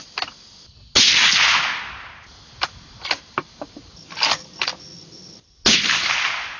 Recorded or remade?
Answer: recorded